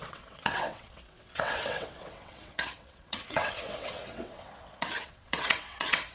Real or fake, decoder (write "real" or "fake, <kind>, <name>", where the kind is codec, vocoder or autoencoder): fake, vocoder, WaveNeXt